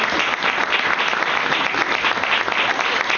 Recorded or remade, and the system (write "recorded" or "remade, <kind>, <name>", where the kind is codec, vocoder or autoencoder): recorded